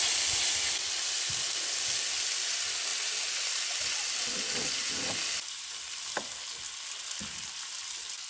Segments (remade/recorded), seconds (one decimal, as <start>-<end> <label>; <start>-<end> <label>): 0.0-8.3 recorded